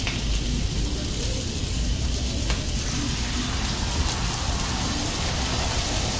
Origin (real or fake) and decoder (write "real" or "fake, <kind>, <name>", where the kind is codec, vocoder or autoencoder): real